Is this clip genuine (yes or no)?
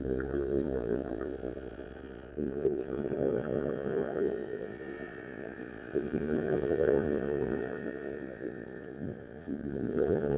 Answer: no